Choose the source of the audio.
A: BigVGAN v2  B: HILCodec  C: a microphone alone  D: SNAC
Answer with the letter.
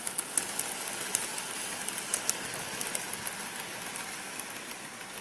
C